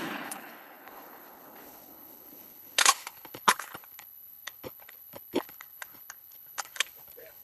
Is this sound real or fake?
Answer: fake